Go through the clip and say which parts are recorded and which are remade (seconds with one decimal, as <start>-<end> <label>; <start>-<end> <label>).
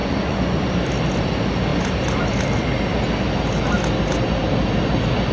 0.0-0.7 remade; 0.7-5.3 recorded